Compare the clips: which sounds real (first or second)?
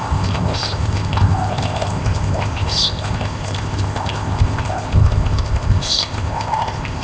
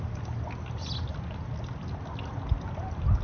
second